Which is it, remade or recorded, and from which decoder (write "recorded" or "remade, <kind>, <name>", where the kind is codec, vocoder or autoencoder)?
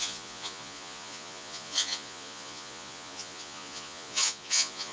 remade, vocoder, Vocos